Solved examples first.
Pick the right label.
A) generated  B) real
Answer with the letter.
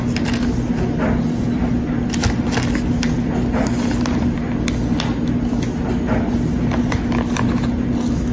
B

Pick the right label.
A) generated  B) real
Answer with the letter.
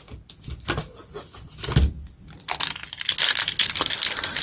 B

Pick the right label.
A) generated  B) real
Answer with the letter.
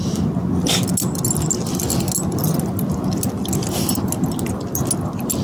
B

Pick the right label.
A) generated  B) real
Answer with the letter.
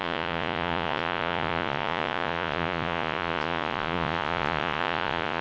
A